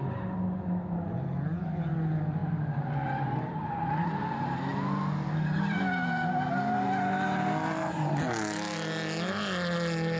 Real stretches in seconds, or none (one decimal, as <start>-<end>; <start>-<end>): 0.0-2.4; 3.5-10.2